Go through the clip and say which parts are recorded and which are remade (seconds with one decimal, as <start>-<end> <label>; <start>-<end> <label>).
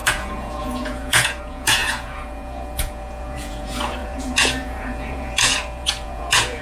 0.0-6.6 remade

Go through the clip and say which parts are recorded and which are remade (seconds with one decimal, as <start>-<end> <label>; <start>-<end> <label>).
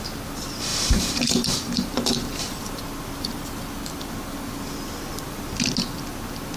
0.0-0.7 recorded; 0.7-2.8 remade; 2.8-6.6 recorded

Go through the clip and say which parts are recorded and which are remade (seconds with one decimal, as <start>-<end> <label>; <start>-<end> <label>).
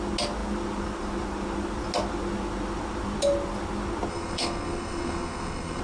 0.0-4.1 recorded; 4.1-5.8 remade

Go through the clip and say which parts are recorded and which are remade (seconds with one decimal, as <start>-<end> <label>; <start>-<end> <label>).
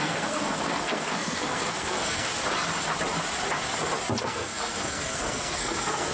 0.0-2.3 remade; 2.3-4.2 recorded; 4.2-6.1 remade